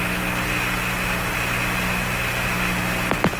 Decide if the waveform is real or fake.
real